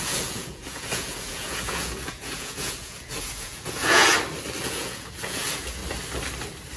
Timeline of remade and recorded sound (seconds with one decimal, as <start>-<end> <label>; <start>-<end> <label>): 0.0-4.1 remade; 4.1-4.6 recorded; 4.6-5.8 remade; 5.8-6.8 recorded